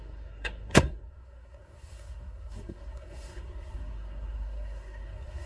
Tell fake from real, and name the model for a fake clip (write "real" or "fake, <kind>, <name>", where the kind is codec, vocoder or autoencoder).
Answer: fake, codec, SNAC